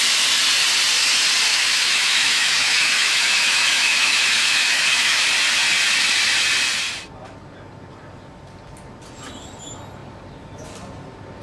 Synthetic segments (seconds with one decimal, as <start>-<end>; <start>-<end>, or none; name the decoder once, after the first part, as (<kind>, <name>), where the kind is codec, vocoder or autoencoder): 1.5-5.2 (autoencoder, DAC-VAE)